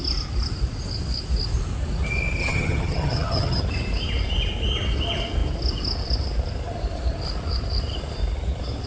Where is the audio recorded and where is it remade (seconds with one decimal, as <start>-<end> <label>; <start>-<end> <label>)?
0.0-2.4 recorded; 2.4-3.6 remade; 3.6-8.9 recorded